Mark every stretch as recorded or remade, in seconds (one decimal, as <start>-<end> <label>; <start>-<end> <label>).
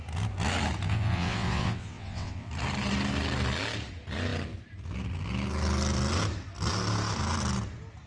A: 0.0-0.9 recorded; 0.9-2.5 remade; 2.5-8.1 recorded